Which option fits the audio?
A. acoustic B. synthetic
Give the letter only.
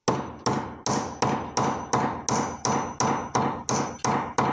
A